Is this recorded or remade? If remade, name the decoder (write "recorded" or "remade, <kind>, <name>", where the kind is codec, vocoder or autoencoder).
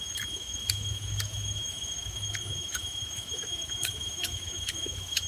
remade, autoencoder, DAC-VAE